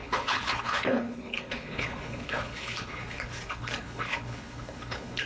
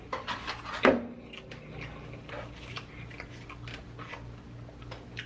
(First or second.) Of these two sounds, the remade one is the first